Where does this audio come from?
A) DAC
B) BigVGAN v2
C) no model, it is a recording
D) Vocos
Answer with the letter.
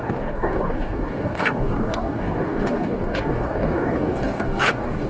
A